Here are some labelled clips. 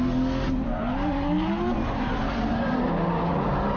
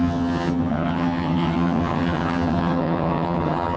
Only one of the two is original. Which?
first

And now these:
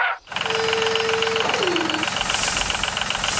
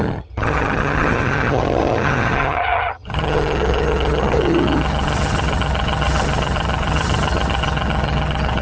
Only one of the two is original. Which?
first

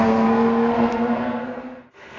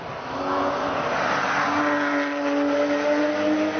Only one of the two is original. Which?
second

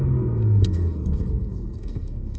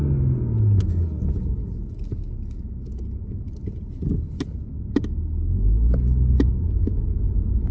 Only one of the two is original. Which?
second